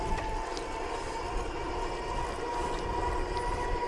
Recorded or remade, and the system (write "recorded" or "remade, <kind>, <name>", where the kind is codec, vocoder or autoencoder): recorded